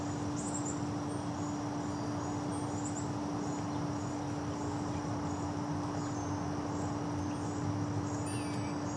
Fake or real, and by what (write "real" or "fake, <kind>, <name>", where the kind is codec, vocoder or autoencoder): real